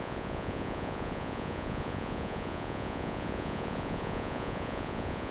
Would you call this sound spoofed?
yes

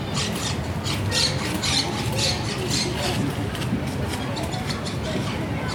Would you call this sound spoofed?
no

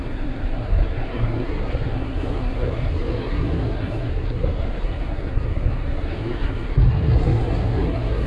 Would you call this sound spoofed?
yes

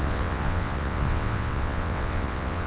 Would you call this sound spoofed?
yes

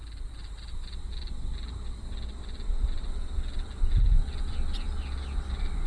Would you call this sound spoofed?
no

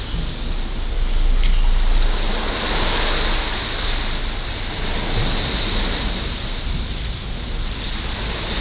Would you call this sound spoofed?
no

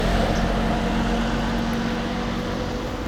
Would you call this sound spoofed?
no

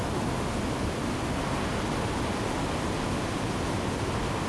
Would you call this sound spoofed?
no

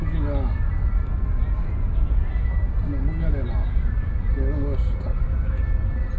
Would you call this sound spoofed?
no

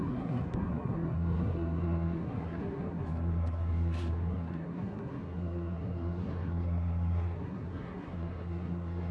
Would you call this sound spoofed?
yes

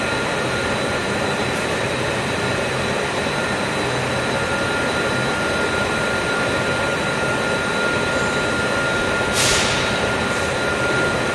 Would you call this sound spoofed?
no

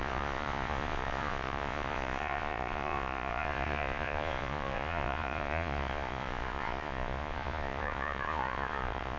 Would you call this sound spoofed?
yes